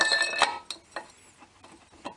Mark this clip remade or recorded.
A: recorded